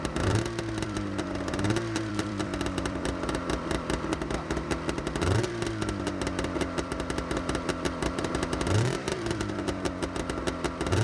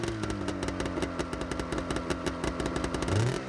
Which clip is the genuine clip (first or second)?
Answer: second